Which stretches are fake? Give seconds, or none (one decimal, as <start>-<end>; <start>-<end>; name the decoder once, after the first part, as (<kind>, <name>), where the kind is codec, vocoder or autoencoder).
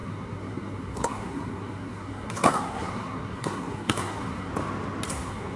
0.0-4.5 (codec, SNAC); 5.1-5.6